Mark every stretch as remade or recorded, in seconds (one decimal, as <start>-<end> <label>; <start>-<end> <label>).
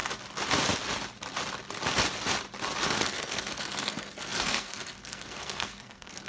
0.0-2.9 recorded; 2.9-6.3 remade